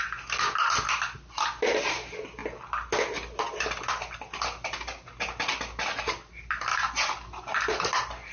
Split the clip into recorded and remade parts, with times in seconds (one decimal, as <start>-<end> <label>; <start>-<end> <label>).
0.0-8.3 recorded